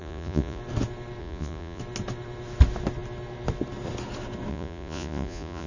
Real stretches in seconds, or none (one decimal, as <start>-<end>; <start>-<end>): 0.6-1.2; 1.8-4.5